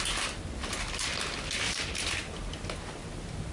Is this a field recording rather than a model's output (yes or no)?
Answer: yes